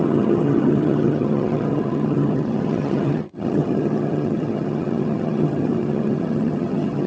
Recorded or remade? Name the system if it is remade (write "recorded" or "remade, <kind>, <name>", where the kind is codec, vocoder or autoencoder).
remade, vocoder, HiFi-GAN